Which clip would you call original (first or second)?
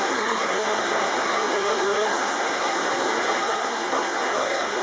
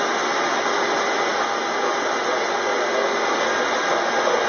second